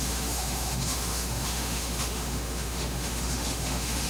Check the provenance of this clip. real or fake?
fake